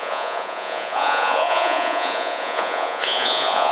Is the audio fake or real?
fake